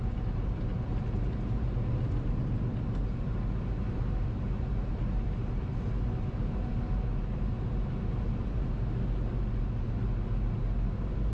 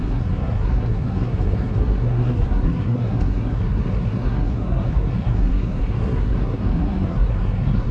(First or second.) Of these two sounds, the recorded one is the first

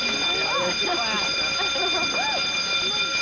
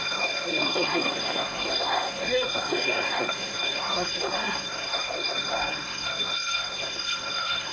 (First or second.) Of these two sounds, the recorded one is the first